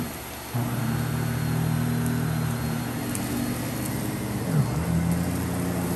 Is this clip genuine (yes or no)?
yes